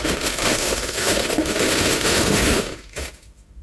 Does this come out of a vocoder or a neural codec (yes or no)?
yes